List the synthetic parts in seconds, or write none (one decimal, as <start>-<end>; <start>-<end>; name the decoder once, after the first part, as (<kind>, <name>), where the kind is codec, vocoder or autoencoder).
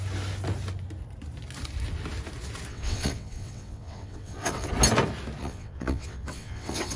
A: 2.7-4.7 (vocoder, WaveNeXt); 5.4-7.0